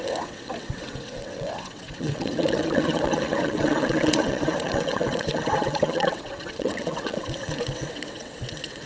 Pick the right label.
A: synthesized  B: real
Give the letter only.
A